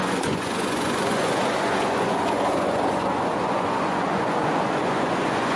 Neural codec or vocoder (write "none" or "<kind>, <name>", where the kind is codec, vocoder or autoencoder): vocoder, Vocos